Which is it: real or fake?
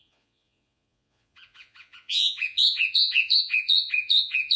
fake